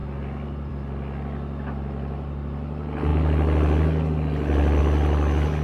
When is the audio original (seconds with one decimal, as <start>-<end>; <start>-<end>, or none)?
0.0-5.6